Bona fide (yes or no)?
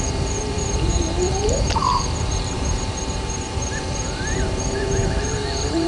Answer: no